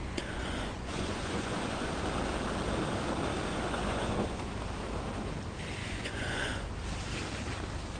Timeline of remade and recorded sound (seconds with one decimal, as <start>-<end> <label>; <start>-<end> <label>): 0.0-1.9 remade; 1.9-3.5 recorded; 3.5-4.5 remade; 4.5-5.8 recorded; 5.8-6.7 remade; 6.7-8.0 recorded